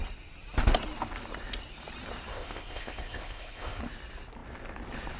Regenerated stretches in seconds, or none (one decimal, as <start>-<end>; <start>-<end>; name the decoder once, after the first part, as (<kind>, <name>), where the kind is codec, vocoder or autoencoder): 2.3-3.8 (codec, ZipCodec)